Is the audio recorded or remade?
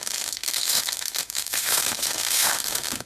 remade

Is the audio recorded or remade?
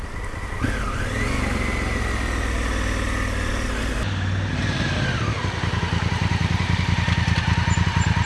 recorded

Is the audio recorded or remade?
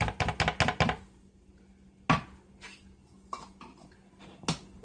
recorded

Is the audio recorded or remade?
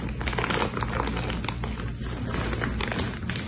recorded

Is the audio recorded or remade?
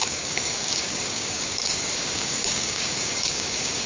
remade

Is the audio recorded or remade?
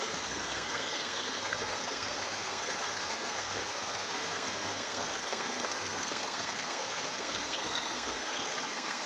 remade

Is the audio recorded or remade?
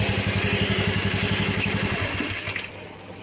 recorded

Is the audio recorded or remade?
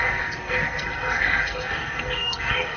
remade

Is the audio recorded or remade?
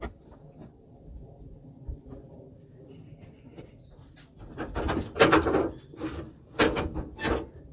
recorded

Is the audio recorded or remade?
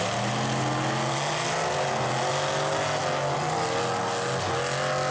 recorded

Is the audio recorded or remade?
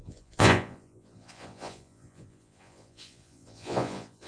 remade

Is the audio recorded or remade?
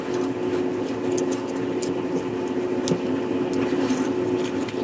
recorded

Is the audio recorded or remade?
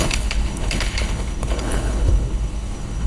remade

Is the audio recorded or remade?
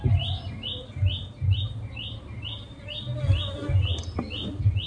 recorded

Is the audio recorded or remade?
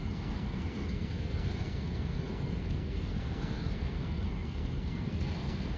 remade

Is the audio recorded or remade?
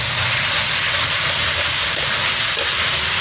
recorded